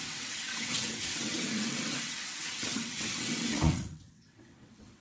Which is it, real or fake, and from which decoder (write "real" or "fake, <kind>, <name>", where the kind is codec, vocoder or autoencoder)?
fake, vocoder, WaveNeXt